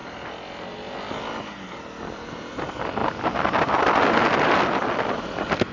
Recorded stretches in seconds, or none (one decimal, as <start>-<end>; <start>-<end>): 0.0-5.7